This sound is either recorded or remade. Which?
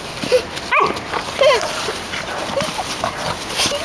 recorded